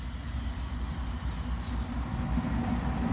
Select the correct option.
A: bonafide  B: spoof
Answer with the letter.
A